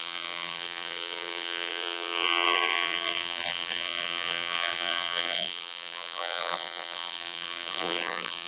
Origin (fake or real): fake